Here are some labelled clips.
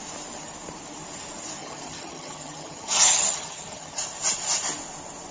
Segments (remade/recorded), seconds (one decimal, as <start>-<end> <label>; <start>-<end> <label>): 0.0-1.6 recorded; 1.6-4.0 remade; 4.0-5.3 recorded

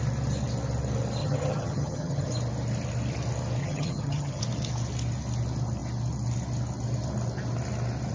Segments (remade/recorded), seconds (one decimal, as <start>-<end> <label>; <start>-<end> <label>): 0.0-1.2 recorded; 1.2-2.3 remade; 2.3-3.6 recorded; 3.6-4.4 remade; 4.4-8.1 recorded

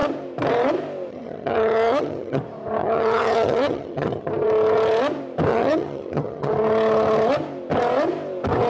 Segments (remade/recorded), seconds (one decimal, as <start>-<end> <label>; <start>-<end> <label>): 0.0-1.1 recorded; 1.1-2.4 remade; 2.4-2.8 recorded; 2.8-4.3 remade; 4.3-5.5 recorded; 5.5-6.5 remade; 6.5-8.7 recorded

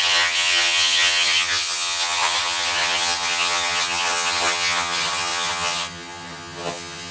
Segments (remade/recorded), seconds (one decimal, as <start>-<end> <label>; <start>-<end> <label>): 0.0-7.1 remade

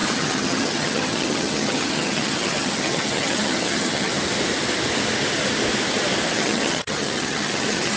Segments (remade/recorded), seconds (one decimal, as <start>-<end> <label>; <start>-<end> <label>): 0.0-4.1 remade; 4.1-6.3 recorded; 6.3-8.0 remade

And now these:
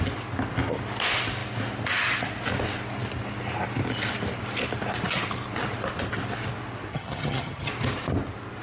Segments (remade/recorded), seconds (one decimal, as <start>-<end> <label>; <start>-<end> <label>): 0.0-6.9 recorded; 6.9-7.7 remade; 7.7-8.6 recorded